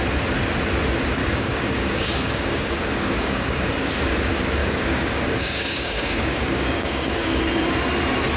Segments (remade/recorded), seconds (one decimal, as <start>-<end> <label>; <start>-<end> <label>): 0.0-1.2 recorded; 1.2-3.7 remade; 3.7-4.6 recorded; 4.6-7.4 remade; 7.4-8.4 recorded